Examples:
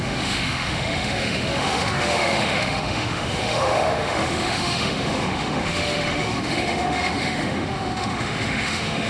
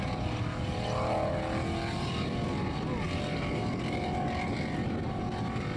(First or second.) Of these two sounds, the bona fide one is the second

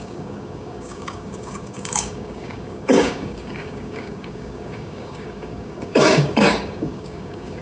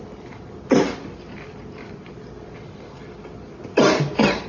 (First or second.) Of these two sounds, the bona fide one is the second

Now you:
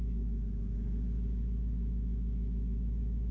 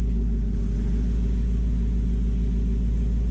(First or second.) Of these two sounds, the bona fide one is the second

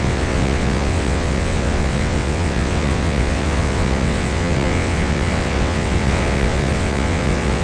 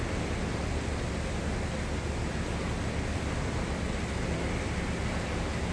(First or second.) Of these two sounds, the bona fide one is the second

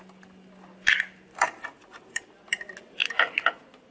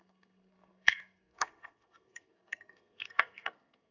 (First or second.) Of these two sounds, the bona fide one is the first